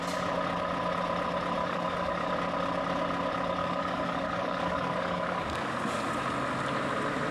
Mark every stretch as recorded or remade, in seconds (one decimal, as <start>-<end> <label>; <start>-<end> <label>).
0.0-1.6 recorded; 1.6-2.3 remade; 2.3-3.6 recorded; 3.6-6.0 remade; 6.0-7.3 recorded